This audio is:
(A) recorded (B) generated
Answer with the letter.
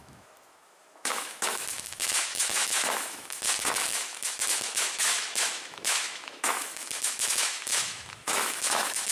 B